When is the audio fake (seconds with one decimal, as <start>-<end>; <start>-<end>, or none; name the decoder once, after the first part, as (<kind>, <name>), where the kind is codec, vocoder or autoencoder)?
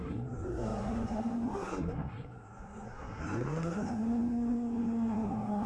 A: 0.0-5.7 (codec, SNAC)